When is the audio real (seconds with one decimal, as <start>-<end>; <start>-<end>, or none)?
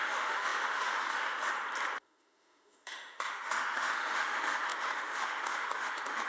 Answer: 1.5-2.0